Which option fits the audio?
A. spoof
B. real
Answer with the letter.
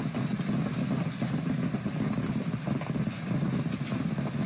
B